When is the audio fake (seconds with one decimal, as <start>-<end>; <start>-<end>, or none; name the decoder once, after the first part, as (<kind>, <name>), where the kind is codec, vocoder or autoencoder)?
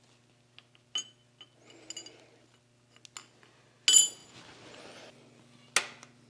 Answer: none